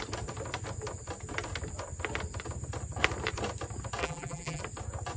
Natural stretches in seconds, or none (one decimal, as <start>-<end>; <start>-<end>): 0.0-4.0; 4.6-5.2